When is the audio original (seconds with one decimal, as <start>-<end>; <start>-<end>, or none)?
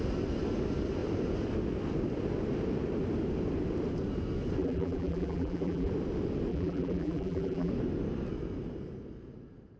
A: 0.0-4.6; 5.9-6.5; 7.7-9.8